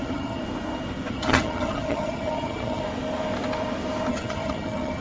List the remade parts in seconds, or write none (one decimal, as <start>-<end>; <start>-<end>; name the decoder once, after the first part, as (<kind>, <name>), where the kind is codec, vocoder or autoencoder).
0.0-0.4 (vocoder, HiFi-GAN); 1.1-2.8; 4.1-5.0